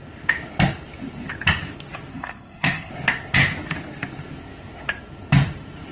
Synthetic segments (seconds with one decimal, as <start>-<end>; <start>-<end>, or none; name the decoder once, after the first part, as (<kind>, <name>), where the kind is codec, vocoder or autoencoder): 2.1-2.9 (codec, SNAC)